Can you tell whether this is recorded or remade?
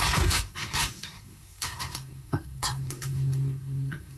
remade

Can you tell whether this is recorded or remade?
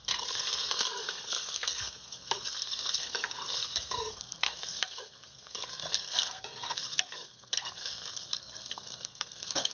remade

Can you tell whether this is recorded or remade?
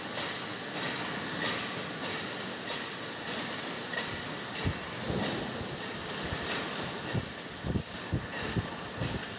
recorded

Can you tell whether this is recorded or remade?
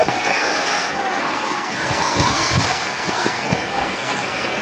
remade